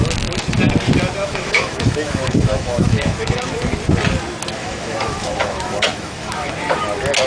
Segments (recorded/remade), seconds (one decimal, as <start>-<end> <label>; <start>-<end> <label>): 0.0-1.2 recorded; 1.2-3.5 remade; 3.5-4.6 recorded; 4.6-6.5 remade; 6.5-7.3 recorded